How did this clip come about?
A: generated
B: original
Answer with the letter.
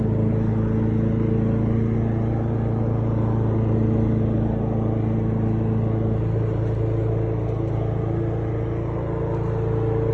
B